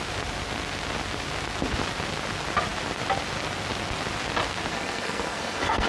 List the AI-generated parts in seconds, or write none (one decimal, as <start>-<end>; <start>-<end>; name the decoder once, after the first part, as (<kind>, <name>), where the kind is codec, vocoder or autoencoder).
4.7-5.9 (codec, SNAC)